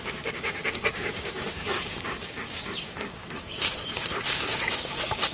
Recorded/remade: remade